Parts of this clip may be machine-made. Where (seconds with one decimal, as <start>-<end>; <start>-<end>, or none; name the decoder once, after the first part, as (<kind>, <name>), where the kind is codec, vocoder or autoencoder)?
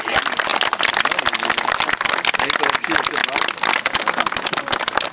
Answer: none